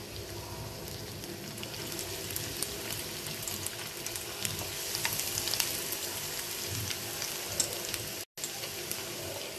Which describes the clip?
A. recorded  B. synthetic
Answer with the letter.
A